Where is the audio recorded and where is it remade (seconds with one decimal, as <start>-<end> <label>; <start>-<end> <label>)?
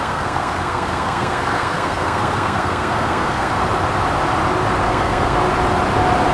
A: 0.0-3.5 remade; 3.5-4.8 recorded; 4.8-5.4 remade; 5.4-6.3 recorded